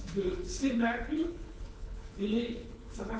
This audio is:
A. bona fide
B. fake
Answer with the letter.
B